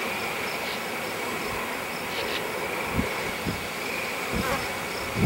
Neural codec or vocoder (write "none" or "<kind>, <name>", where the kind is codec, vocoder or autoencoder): none